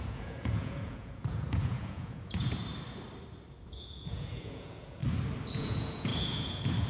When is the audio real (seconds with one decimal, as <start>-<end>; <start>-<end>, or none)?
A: 2.6-3.7; 5.0-5.5